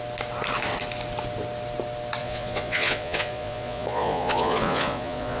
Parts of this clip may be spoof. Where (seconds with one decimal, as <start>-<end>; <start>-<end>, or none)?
2.2-5.4